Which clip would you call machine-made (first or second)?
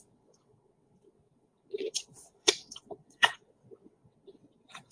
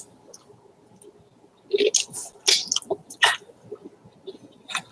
first